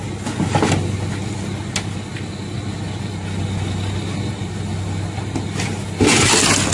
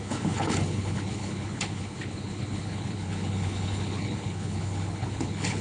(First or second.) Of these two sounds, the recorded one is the first